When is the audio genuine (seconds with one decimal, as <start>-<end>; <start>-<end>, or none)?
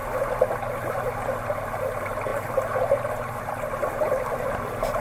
0.0-5.0